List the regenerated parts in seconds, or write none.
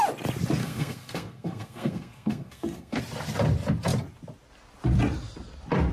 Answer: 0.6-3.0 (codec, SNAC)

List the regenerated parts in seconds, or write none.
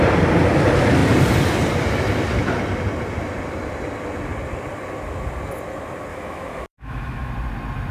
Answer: 6.1-7.3 (autoencoder, DAC-VAE)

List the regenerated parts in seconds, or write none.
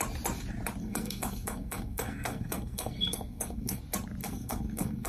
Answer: 0.8-3.8 (codec, SNAC); 4.2-5.1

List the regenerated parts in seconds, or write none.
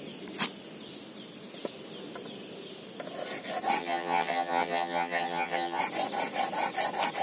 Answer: 3.8-5.8 (vocoder, HiFi-GAN)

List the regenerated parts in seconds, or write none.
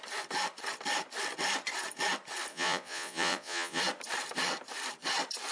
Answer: 2.5-3.8 (vocoder, Vocos)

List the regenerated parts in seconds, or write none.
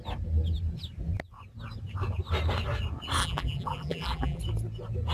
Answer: 3.2-4.4 (vocoder, BigVGAN v2)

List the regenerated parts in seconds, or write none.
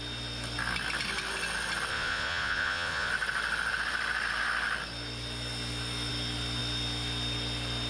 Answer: 1.9-3.1 (vocoder, Vocos)